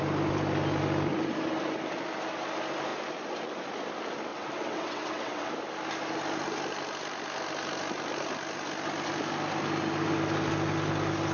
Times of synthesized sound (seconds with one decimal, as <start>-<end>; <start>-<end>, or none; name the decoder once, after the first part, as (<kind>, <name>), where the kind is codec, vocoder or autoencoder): 4.3-5.5 (vocoder, WaveNeXt)